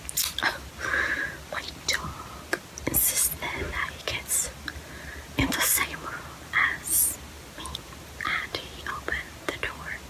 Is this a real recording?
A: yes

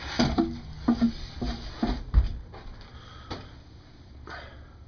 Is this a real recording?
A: yes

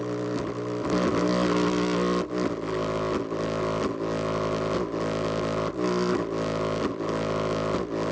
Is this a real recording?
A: yes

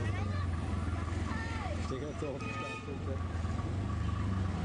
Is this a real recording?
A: yes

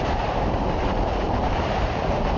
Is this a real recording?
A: no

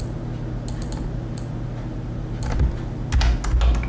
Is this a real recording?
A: yes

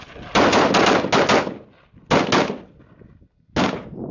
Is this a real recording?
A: yes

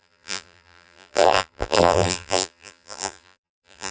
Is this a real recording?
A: no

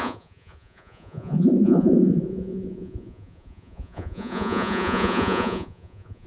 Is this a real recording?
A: no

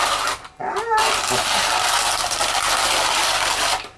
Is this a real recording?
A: yes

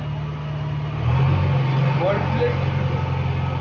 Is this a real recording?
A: yes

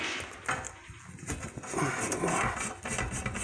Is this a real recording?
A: yes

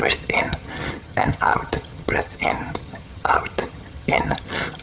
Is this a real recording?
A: no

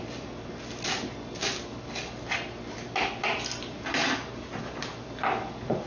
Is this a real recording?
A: yes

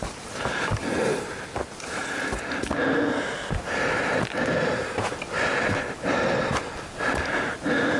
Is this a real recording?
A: yes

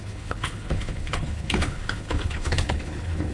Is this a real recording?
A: no